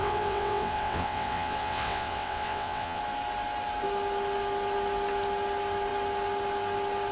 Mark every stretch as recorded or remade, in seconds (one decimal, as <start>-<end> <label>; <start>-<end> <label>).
0.0-3.0 remade; 3.0-7.1 recorded